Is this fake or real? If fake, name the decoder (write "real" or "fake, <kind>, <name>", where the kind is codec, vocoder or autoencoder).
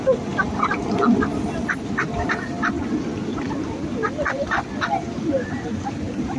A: real